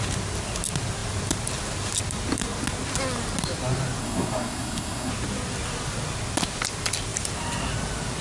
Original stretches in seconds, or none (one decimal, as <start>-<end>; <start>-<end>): 0.0-4.0; 5.1-8.2